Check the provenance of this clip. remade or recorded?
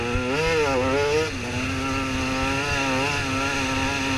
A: recorded